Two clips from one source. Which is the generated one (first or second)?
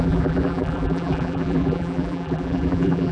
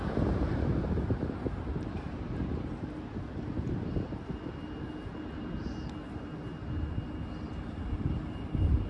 first